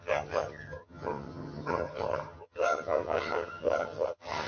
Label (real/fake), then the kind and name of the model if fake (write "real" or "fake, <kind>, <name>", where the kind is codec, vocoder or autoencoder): fake, vocoder, HiFi-GAN